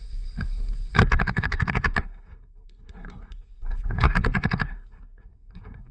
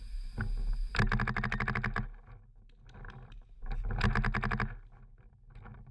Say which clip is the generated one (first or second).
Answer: first